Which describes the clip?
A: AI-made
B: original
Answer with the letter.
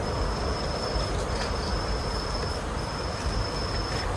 A